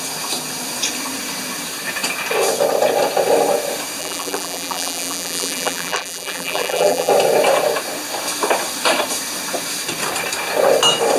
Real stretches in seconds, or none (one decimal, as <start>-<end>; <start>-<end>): 0.0-4.0; 7.1-11.2